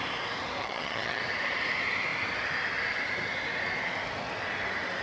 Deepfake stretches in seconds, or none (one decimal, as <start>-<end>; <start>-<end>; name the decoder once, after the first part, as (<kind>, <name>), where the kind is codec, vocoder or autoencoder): 0.6-1.2 (vocoder, HiFi-GAN)